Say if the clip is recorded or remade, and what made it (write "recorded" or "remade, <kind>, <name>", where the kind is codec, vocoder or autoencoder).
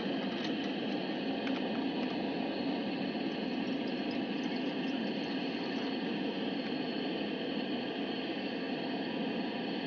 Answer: recorded